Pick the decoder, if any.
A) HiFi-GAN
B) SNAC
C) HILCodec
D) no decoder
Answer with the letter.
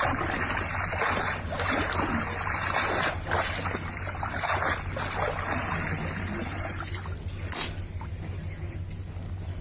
D